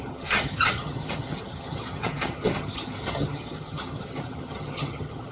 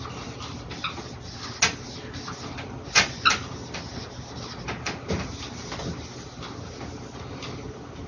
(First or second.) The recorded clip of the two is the second